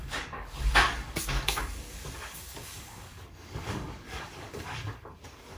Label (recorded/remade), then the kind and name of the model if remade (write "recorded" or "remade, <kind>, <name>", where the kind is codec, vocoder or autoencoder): remade, codec, DAC